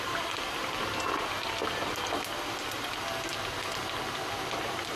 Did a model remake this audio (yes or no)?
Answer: no